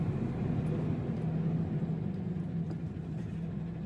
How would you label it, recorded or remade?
recorded